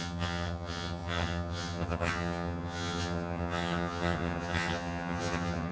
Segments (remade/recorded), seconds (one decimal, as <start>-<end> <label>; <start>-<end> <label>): 0.0-5.7 remade